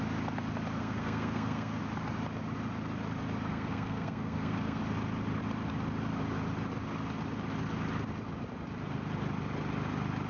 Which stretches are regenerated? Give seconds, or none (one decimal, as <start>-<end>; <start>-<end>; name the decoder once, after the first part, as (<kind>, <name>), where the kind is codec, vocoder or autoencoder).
0.8-1.8 (codec, SNAC); 3.5-4.8